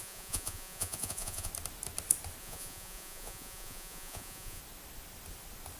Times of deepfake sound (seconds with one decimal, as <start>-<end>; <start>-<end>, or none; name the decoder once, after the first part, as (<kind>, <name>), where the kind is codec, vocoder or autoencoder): 0.0-1.5 (vocoder, Vocos); 2.4-4.6